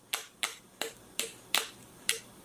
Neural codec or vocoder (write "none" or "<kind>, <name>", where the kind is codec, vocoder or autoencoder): vocoder, BigVGAN v2